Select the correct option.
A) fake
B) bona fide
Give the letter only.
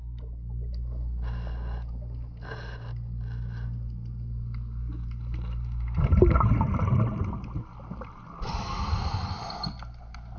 B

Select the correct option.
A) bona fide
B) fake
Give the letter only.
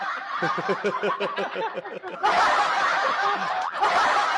A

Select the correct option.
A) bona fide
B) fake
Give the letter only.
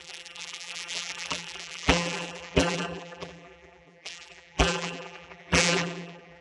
B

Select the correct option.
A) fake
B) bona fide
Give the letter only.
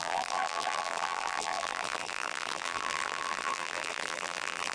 A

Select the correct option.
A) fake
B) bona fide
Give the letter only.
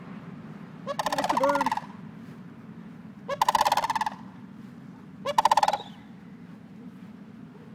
B